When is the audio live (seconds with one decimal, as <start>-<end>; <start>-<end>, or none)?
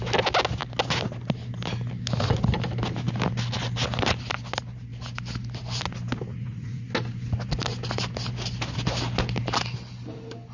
0.0-6.3; 6.8-10.5